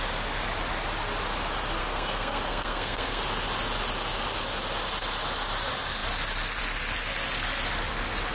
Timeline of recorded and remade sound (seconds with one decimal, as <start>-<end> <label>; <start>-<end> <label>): 0.0-1.8 recorded; 1.8-3.2 remade; 3.2-8.3 recorded